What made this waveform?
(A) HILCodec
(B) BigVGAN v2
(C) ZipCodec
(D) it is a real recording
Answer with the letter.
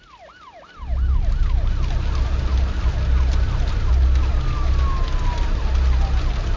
D